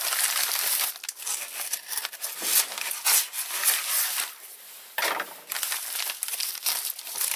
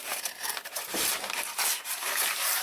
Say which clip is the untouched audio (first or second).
first